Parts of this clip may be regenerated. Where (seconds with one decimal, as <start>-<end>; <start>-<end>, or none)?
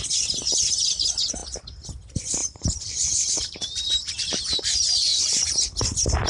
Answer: 2.4-4.1; 5.1-5.6